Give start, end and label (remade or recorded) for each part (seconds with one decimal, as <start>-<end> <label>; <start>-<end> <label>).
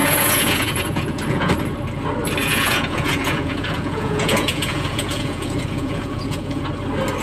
0.0-1.5 remade; 1.5-2.4 recorded; 2.4-6.6 remade; 6.6-7.2 recorded